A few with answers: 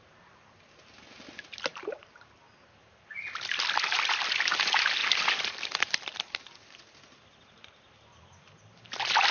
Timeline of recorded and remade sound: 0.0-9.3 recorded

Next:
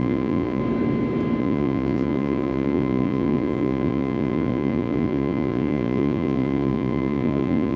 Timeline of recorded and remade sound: 0.0-0.6 remade; 0.6-1.4 recorded; 1.4-7.8 remade

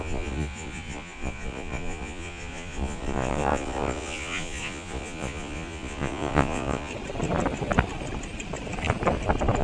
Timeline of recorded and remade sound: 0.0-6.9 remade; 6.9-9.6 recorded

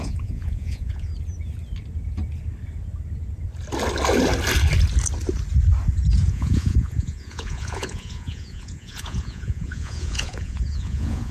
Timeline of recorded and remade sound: 0.0-1.1 remade; 1.1-6.3 recorded; 6.3-11.3 remade

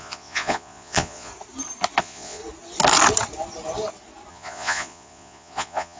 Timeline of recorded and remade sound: 0.0-1.3 remade; 1.3-2.0 recorded; 2.0-2.4 remade; 2.4-4.3 recorded; 4.3-6.0 remade

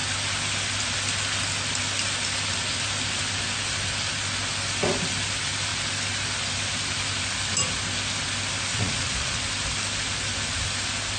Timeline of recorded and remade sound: 0.0-8.7 recorded; 8.7-9.4 remade; 9.4-11.2 recorded

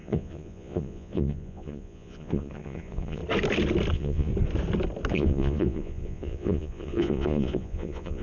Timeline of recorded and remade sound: 0.0-3.2 remade; 3.2-3.9 recorded; 3.9-4.3 remade; 4.3-5.1 recorded; 5.1-8.2 remade

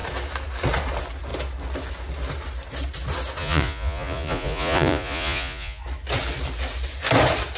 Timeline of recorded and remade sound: 0.0-3.4 recorded; 3.4-5.8 remade; 5.8-7.6 recorded